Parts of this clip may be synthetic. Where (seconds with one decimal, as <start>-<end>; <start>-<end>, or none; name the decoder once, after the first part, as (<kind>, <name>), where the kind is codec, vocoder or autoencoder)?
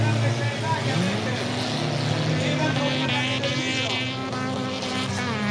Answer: none